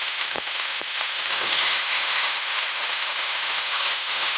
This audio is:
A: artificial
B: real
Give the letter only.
A